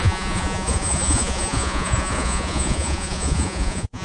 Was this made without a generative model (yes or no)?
no